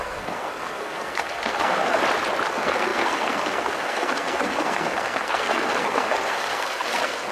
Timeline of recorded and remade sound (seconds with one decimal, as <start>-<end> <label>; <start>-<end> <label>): 0.0-2.0 remade; 2.0-2.5 recorded; 2.5-7.3 remade